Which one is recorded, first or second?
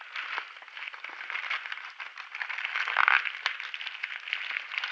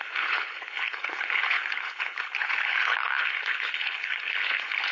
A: first